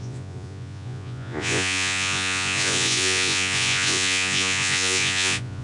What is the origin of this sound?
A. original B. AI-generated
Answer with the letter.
B